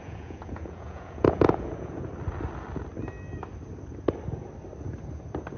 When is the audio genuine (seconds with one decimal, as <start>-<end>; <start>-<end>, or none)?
2.1-5.6